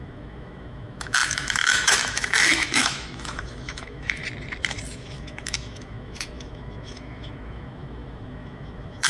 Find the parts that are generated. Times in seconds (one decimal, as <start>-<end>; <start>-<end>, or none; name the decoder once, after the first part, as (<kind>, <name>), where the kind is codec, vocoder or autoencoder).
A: 0.0-4.2 (autoencoder, DAC-VAE); 4.9-9.1